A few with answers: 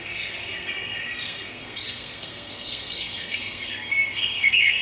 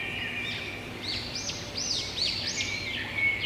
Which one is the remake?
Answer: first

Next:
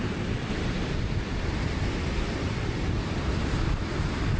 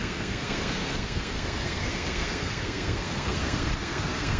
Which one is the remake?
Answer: second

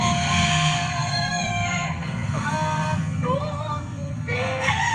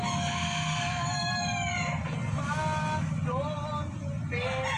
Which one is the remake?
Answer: first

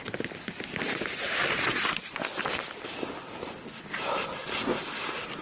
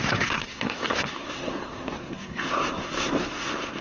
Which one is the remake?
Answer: second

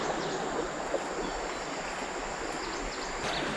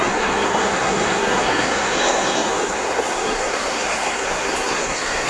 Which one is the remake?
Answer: second